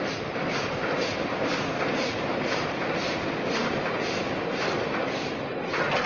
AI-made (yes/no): no